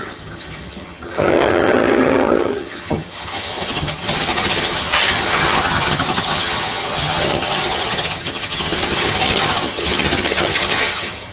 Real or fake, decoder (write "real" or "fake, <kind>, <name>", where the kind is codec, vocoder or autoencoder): fake, vocoder, HiFi-GAN